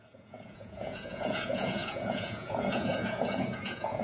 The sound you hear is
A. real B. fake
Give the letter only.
B